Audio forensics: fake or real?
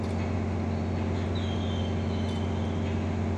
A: real